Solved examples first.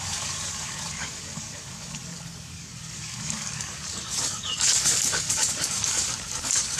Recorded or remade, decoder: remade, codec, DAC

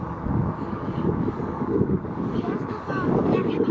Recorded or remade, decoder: remade, codec, DAC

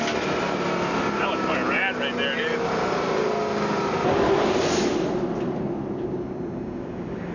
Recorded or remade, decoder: recorded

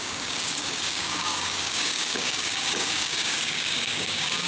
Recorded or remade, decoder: remade, codec, DAC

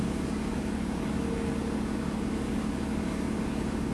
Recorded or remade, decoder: remade, codec, DAC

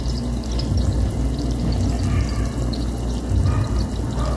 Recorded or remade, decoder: recorded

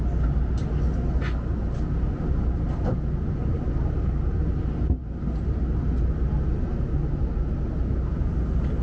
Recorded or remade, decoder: recorded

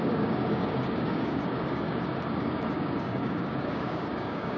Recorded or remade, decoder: remade, codec, DAC